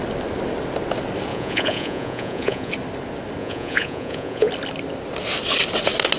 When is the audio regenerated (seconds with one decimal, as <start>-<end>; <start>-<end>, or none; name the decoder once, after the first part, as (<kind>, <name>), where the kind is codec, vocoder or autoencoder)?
1.3-2.7 (vocoder, Vocos); 3.4-4.5